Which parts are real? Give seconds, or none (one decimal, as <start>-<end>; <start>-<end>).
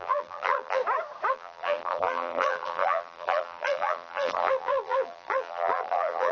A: 0.8-1.3